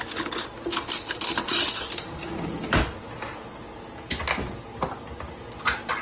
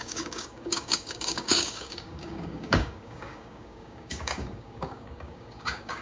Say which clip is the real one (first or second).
first